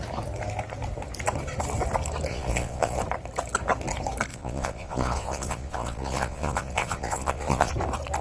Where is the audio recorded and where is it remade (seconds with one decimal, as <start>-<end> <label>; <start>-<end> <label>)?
0.0-2.3 recorded; 2.3-3.0 remade; 3.0-4.3 recorded; 4.3-7.7 remade; 7.7-8.2 recorded